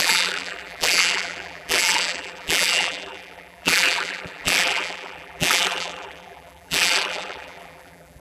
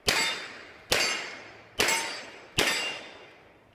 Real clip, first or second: second